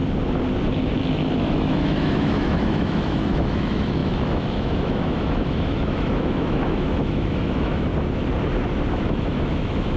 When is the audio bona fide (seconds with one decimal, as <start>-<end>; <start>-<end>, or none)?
0.0-1.4; 7.9-8.9

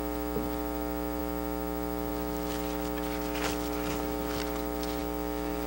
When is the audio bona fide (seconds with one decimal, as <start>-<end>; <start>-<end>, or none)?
0.0-5.0

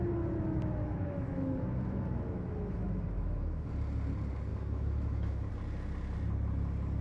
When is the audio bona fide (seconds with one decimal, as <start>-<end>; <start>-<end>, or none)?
0.0-0.8; 3.7-4.5; 5.5-7.0